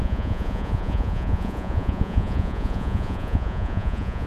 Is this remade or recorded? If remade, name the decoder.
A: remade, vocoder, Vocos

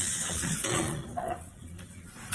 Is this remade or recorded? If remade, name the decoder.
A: remade, vocoder, Vocos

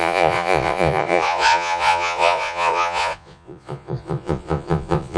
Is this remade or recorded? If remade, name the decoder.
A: remade, vocoder, Vocos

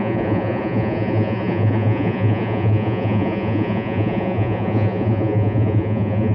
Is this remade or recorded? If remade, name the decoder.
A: remade, vocoder, Vocos